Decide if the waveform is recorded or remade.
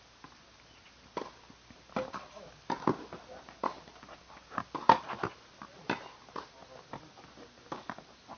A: recorded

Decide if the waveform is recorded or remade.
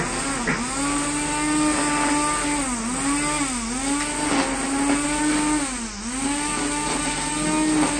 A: recorded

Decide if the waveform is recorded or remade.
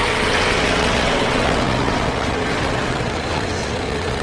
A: remade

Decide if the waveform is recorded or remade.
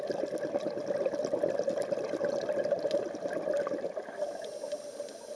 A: recorded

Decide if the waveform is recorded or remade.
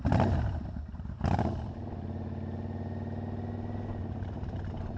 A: recorded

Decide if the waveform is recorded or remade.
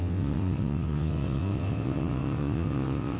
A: remade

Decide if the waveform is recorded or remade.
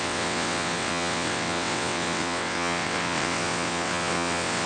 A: remade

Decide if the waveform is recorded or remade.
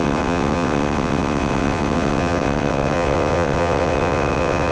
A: remade